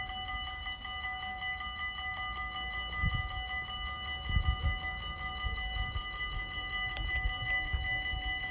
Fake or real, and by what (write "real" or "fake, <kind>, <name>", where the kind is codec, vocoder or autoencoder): real